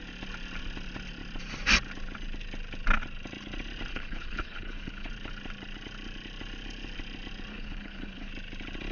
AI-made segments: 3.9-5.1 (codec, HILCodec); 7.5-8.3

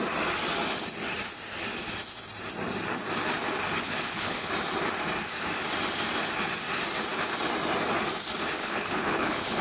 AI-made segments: 3.8-4.5 (codec, HILCodec); 8.6-9.6

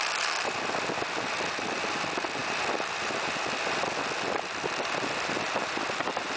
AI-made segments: none

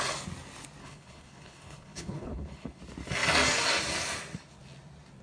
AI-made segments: 0.8-2.8 (codec, HILCodec)

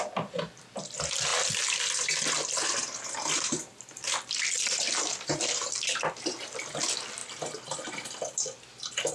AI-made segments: none

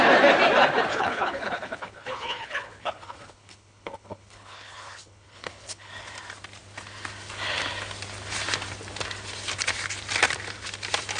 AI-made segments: 0.9-5.9 (codec, HILCodec)

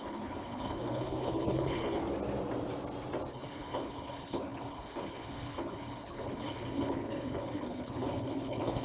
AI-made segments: 0.0-2.0 (codec, HILCodec); 3.3-8.8

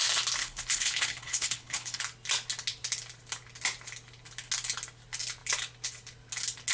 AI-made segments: 0.4-2.0 (codec, HILCodec)